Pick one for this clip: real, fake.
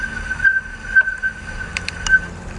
real